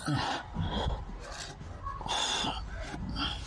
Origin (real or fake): real